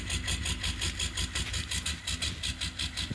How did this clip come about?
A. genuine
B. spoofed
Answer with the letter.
A